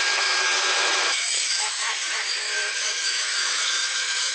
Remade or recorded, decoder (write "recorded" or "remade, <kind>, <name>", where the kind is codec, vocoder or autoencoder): remade, autoencoder, DAC-VAE